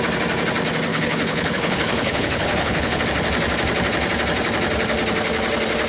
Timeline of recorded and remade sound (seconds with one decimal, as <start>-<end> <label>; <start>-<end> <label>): 0.0-0.9 recorded; 0.9-3.0 remade; 3.0-5.9 recorded